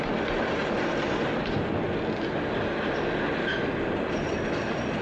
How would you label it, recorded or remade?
recorded